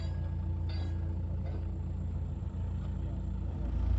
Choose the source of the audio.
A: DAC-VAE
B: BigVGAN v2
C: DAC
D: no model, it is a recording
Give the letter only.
D